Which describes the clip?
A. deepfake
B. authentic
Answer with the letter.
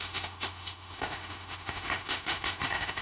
A